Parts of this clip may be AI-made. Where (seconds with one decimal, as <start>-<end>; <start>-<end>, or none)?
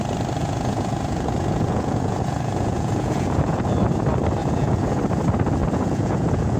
0.4-3.6; 4.4-5.0; 5.6-6.6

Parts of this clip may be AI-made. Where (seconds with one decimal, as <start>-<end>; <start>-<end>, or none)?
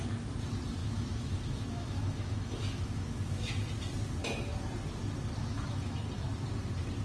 0.8-3.5; 5.4-6.0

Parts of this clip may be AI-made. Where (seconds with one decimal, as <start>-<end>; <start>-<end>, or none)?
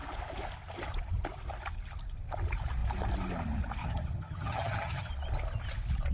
3.8-5.1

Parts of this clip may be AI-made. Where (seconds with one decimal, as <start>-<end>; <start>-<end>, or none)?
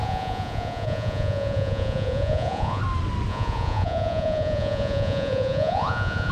0.0-2.8; 3.3-6.3